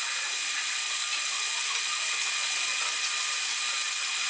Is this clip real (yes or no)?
yes